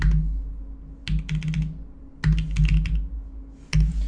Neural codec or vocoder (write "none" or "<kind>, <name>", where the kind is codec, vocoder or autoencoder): none